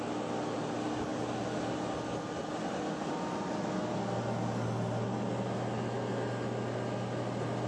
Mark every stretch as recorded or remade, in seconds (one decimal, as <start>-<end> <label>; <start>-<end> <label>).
0.0-7.7 recorded